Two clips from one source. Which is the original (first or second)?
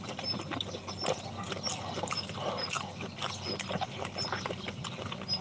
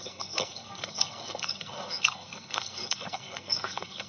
first